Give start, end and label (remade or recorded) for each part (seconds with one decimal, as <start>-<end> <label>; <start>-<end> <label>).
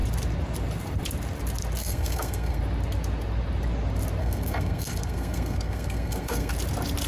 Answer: 0.0-1.8 recorded; 1.8-2.6 remade; 2.6-4.2 recorded; 4.2-6.5 remade; 6.5-7.1 recorded